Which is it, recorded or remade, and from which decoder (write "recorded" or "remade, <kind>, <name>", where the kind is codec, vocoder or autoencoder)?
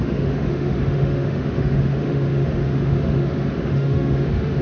remade, autoencoder, DAC-VAE